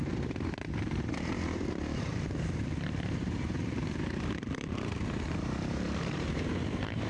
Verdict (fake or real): fake